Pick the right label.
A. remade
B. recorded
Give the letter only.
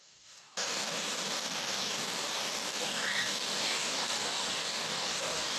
A